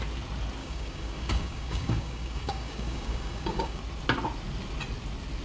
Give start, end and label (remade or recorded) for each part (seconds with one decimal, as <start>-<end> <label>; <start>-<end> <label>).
0.0-0.6 recorded; 0.6-3.8 remade; 3.8-5.4 recorded